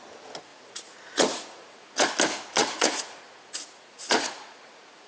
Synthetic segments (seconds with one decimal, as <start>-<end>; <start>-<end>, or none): 0.5-2.1; 2.6-5.1